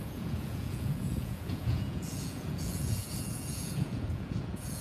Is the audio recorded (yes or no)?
no